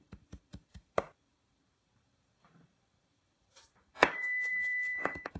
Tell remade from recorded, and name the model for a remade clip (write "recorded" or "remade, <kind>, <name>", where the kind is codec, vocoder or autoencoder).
remade, vocoder, BigVGAN v2